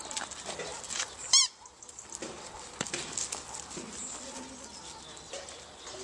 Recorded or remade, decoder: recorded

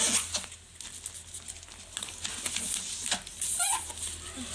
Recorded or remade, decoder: recorded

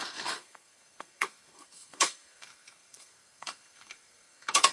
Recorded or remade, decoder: remade, codec, SNAC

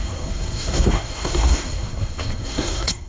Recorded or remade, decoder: remade, codec, SNAC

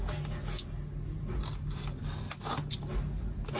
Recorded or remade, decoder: recorded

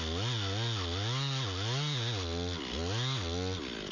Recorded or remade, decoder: recorded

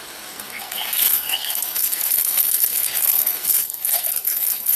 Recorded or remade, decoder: remade, codec, SNAC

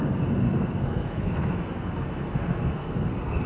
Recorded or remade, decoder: remade, codec, SNAC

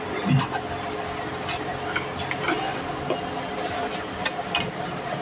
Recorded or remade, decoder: recorded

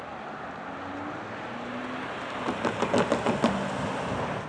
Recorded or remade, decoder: recorded